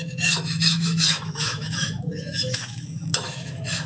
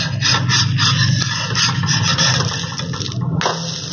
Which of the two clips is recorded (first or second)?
second